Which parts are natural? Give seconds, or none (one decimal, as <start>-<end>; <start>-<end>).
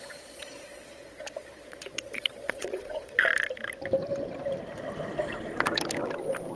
3.3-6.6